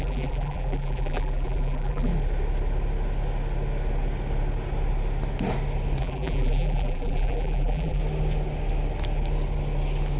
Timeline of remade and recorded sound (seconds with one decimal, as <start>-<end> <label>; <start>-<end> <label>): 0.0-2.1 remade; 2.1-6.0 recorded; 6.0-8.0 remade; 8.0-10.2 recorded